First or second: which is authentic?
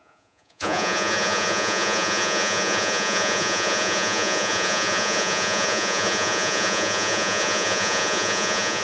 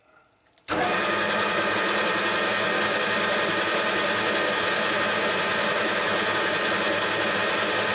second